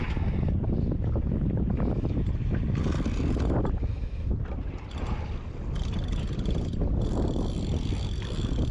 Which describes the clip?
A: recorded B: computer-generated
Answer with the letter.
A